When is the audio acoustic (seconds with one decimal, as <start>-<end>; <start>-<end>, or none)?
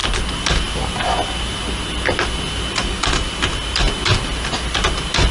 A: 0.0-5.3